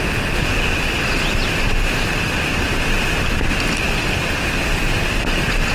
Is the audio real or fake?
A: real